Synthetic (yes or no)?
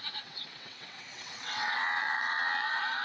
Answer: yes